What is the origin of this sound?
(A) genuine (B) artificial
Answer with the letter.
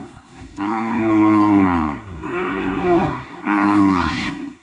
B